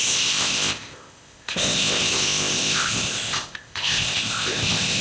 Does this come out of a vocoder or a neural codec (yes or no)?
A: yes